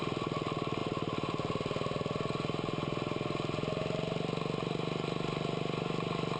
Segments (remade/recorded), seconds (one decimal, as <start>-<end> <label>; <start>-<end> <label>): 0.0-6.4 recorded